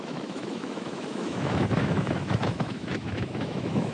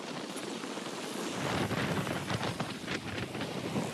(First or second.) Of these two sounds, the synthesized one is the first